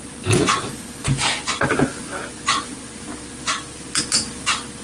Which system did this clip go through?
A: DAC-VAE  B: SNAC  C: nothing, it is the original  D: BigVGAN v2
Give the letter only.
C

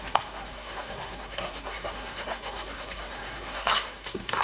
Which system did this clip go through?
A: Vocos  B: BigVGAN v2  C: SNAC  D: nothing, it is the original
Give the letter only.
C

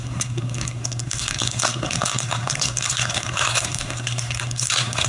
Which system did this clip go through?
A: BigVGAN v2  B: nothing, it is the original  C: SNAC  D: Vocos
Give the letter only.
C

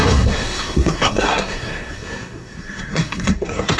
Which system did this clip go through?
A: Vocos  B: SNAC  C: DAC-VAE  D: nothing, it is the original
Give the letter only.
B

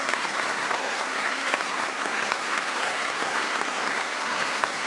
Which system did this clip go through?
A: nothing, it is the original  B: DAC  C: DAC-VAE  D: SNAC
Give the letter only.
D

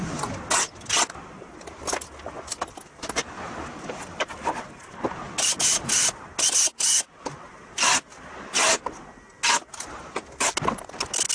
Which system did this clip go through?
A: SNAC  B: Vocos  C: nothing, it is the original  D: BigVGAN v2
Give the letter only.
C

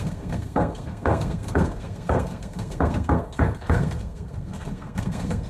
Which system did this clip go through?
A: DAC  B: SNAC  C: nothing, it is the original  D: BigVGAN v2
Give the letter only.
B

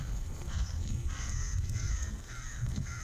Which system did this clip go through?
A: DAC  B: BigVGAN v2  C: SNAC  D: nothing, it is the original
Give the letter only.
C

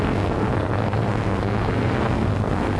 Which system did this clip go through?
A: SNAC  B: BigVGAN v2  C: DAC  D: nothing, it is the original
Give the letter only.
A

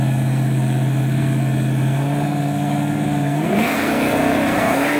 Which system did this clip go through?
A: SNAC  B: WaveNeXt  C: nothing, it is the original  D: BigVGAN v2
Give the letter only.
A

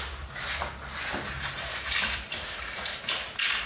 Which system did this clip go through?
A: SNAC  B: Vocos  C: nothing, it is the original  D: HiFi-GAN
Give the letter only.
C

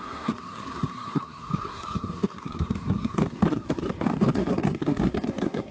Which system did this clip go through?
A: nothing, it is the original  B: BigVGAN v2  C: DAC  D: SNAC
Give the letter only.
D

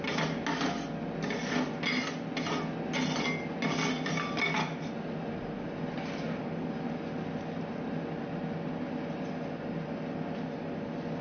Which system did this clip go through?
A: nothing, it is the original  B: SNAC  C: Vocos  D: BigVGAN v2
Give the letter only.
A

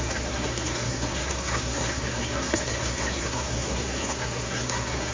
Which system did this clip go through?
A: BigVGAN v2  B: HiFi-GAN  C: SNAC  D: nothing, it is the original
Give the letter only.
C